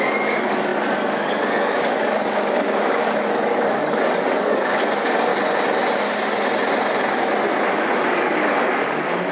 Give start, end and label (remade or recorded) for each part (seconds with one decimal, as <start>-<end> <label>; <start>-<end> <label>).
0.0-5.3 remade; 5.3-7.7 recorded; 7.7-9.3 remade